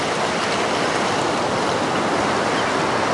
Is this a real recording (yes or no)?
yes